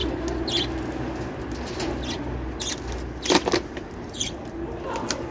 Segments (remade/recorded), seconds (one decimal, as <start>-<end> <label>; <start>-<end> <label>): 0.0-5.3 recorded